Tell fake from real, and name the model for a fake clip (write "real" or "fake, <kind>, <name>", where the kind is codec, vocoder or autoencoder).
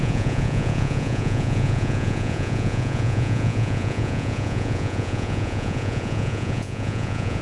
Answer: fake, vocoder, Vocos